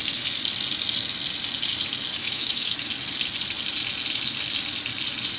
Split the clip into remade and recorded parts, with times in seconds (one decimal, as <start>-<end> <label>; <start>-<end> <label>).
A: 0.0-2.2 recorded; 2.2-2.9 remade; 2.9-5.4 recorded